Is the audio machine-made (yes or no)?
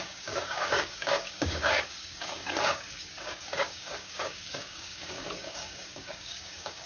yes